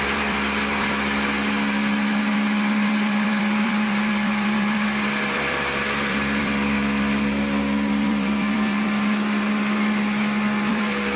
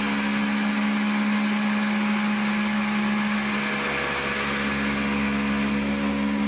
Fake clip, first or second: first